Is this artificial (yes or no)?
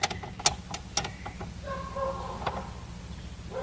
no